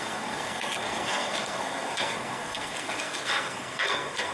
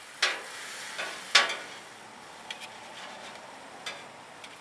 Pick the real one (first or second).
second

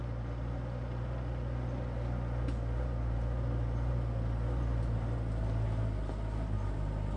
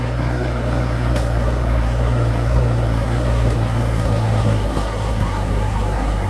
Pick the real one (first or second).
first